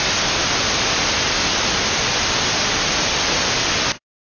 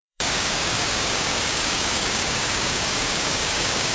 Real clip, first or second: first